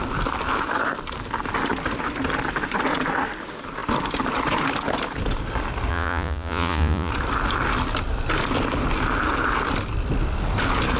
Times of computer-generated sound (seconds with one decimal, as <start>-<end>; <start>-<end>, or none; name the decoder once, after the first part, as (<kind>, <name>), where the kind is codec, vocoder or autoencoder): 5.9-7.1 (vocoder, Vocos)